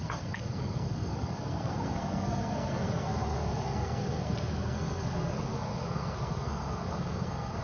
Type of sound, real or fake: fake